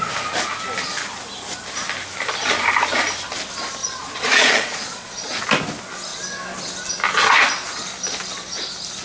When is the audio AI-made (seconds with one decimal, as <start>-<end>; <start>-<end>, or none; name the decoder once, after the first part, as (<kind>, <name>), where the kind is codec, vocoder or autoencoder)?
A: 3.8-5.4 (vocoder, Vocos)